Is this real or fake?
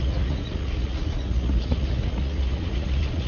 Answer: fake